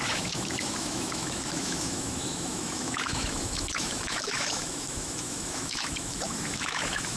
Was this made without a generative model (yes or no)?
no